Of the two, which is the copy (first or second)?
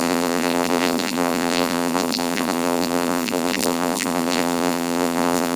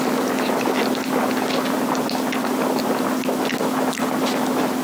first